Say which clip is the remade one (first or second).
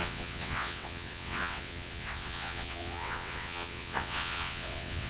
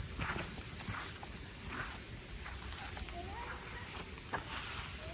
first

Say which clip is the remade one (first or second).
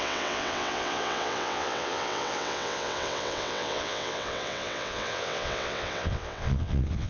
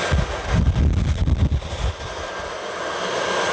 first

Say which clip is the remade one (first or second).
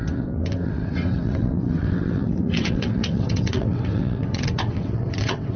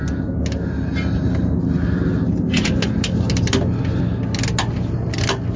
first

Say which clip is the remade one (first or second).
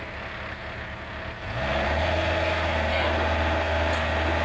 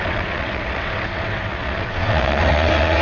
second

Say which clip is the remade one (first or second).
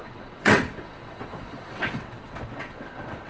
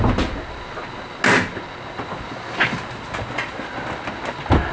first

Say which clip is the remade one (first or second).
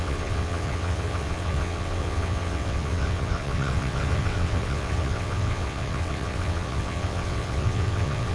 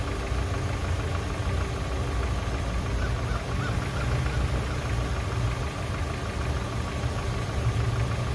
first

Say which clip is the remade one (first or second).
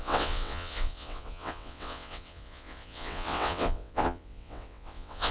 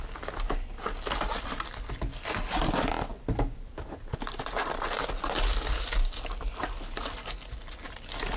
first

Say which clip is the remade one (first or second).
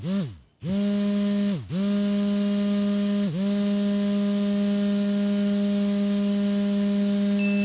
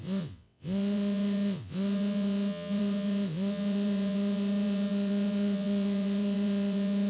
second